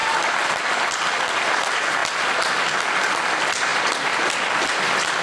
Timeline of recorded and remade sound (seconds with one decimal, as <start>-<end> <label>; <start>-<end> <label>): 0.0-2.0 remade; 2.0-2.9 recorded; 2.9-3.7 remade; 3.7-4.4 recorded; 4.4-5.2 remade